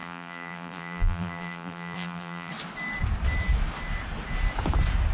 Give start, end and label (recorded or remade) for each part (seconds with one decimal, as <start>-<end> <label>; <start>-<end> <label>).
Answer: 0.0-2.5 remade; 2.5-5.1 recorded